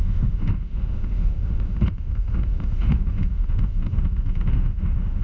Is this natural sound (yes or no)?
no